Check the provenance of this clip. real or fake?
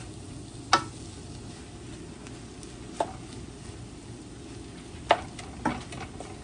real